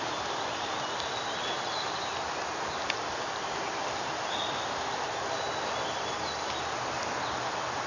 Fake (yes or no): no